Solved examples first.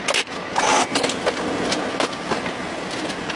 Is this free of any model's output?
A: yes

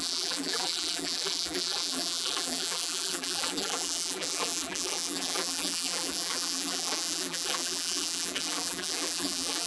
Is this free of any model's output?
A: no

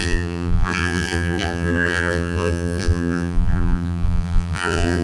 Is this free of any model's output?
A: no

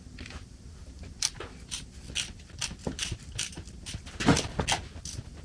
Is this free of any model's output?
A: yes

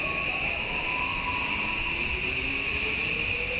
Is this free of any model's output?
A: yes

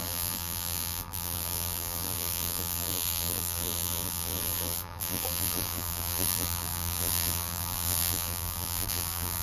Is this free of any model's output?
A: no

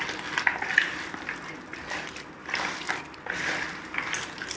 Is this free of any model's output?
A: no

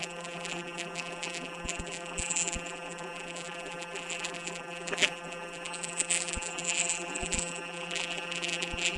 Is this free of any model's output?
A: no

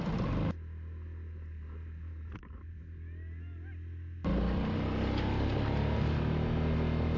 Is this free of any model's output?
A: yes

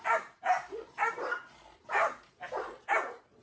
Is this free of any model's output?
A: no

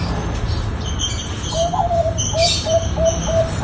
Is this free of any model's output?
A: no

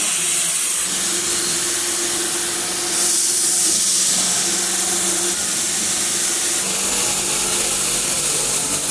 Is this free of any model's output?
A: yes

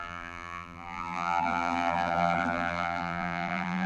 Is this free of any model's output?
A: no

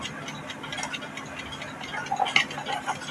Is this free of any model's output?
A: yes